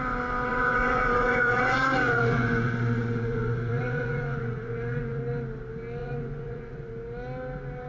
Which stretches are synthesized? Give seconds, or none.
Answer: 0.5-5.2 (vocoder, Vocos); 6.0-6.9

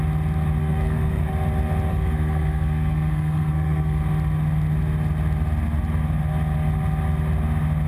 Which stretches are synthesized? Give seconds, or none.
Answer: 0.6-1.3 (codec, SNAC); 1.9-4.0